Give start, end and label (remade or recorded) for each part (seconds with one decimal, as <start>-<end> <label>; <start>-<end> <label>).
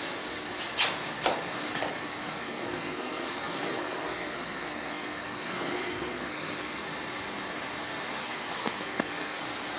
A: 0.0-2.2 recorded; 2.2-6.9 remade; 6.9-8.2 recorded; 8.2-9.4 remade; 9.4-9.8 recorded